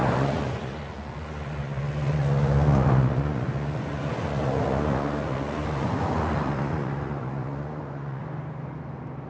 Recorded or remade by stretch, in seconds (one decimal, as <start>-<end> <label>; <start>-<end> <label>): 0.0-8.2 remade; 8.2-9.3 recorded